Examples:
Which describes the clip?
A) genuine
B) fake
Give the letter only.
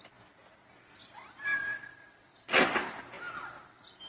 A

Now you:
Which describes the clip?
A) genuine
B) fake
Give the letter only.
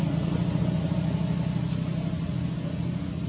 A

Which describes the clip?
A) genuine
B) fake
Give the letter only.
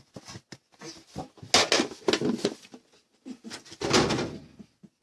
A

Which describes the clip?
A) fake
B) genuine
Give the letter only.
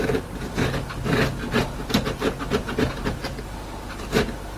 B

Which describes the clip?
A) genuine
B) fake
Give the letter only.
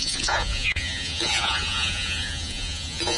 B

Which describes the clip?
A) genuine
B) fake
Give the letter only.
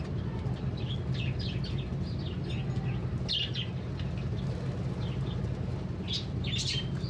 A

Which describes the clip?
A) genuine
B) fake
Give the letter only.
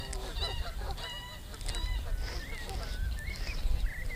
A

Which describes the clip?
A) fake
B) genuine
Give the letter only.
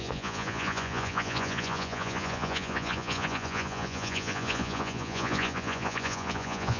A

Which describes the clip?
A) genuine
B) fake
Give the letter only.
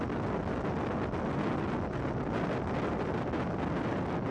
A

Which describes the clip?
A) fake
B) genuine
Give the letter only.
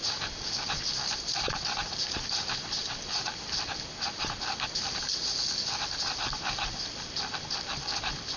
B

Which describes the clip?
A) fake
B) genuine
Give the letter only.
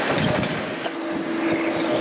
B